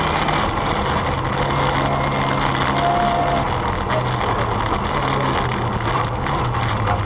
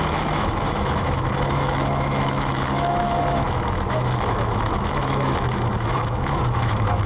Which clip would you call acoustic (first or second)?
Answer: first